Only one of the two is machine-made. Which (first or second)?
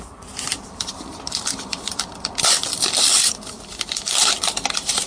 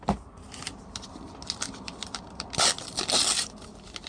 first